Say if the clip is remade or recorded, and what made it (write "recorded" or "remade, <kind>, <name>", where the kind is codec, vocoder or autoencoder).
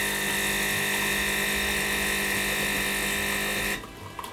recorded